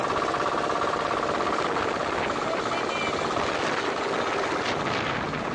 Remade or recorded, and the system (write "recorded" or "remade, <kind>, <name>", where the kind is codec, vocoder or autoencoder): recorded